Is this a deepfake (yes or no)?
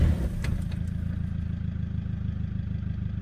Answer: no